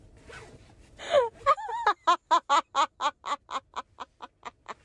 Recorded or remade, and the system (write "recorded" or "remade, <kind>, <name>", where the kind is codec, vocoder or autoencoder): recorded